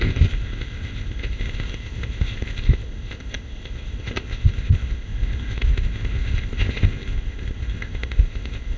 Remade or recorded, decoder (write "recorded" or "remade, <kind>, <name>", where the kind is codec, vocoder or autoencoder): remade, codec, ZipCodec